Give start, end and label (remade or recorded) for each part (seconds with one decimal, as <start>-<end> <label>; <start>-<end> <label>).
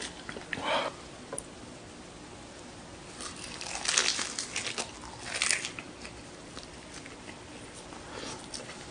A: 0.0-8.9 recorded